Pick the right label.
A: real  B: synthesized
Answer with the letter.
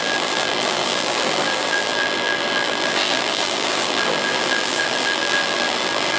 B